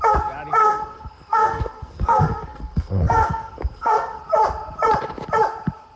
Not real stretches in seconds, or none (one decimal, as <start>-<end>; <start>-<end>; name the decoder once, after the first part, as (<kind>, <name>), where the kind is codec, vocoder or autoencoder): 0.6-4.2 (codec, SNAC)